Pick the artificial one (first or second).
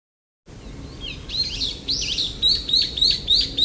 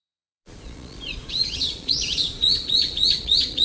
second